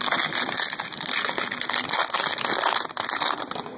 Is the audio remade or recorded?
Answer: recorded